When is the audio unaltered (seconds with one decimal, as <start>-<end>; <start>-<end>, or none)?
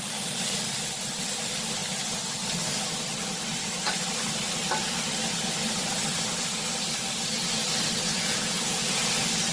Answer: 0.0-8.1; 9.1-9.5